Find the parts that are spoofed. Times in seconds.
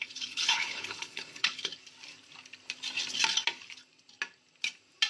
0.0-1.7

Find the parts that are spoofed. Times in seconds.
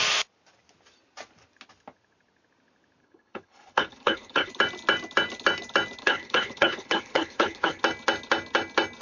3.0-4.5; 6.0-7.8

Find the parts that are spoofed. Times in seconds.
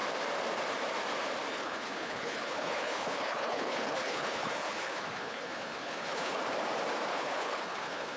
1.5-6.4; 7.1-8.2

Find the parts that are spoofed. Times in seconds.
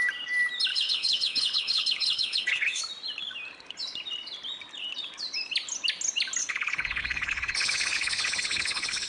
0.7-2.8; 6.4-9.1